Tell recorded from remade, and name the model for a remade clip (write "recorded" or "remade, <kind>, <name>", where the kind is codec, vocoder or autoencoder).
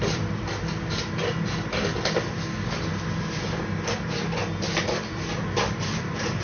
recorded